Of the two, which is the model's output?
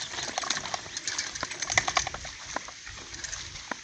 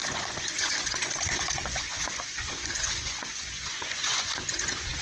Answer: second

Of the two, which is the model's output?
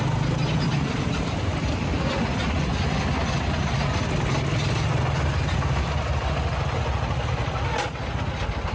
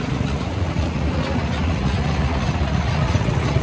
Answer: second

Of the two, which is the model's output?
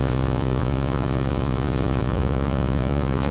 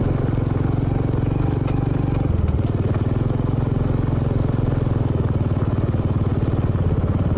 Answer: first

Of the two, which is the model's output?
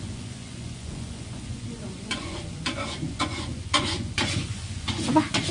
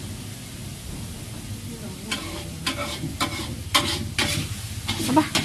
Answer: first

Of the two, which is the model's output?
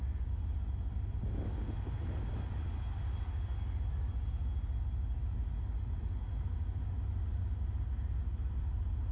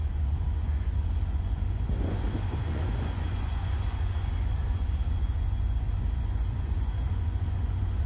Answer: second